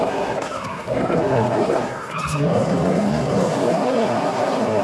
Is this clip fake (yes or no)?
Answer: yes